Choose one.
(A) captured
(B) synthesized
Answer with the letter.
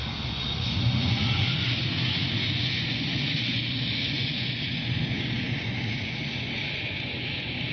B